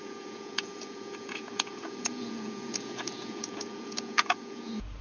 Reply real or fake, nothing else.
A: fake